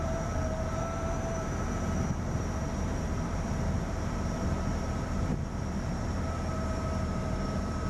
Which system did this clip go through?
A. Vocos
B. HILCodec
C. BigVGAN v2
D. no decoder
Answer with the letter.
C